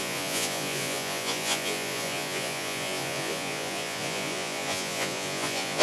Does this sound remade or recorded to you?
remade